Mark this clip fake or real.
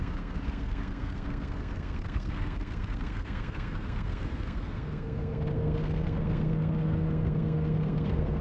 fake